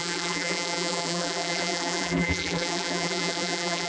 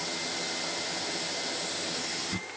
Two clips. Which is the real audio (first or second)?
second